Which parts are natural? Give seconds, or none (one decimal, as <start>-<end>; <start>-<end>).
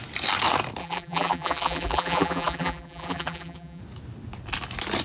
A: 0.0-0.8; 3.8-5.0